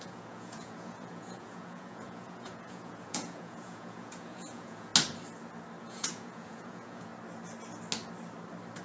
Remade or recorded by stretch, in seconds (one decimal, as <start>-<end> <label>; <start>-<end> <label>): 0.0-4.9 remade; 4.9-5.8 recorded; 5.8-7.1 remade; 7.1-8.8 recorded